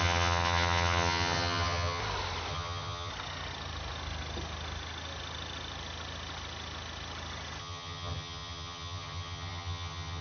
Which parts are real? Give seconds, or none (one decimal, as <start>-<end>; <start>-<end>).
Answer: 2.0-2.5; 3.1-7.6